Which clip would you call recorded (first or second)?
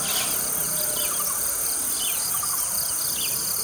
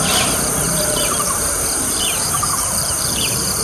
first